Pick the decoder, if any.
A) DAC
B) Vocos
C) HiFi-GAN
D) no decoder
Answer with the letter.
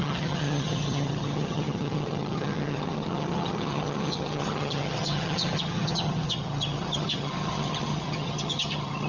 C